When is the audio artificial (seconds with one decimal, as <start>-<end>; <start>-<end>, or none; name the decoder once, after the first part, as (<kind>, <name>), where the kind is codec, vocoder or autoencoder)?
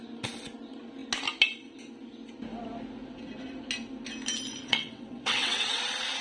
4.6-5.8 (vocoder, WaveNeXt)